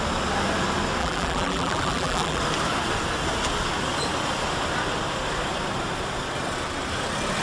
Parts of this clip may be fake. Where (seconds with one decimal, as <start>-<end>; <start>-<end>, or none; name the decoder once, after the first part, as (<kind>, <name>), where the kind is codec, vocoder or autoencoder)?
1.0-2.4 (vocoder, BigVGAN v2)